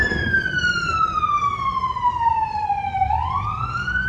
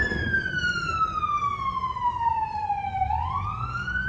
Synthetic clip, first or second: first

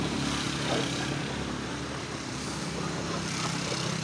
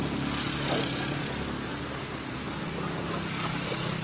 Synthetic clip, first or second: first